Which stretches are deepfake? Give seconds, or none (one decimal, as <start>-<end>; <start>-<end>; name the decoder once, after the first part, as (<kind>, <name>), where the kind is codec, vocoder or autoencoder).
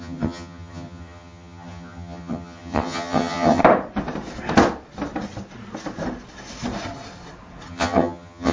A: 0.0-3.6 (vocoder, HiFi-GAN); 7.7-8.5